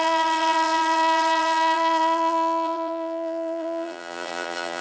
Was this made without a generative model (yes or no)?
no